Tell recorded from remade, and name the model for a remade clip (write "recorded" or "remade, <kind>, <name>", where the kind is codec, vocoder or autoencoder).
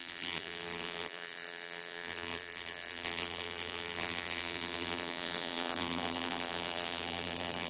remade, vocoder, BigVGAN v2